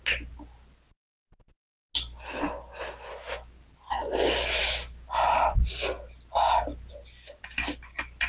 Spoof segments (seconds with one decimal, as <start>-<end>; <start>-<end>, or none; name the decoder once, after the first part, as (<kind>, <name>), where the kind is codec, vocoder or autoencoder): none